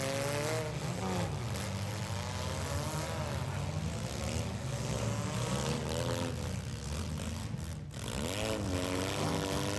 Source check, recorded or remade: recorded